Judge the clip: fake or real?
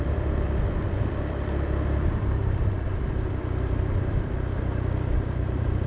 fake